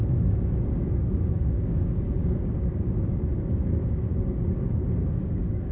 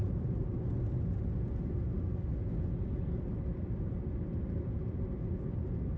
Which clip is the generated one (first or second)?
first